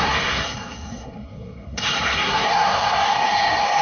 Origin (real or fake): fake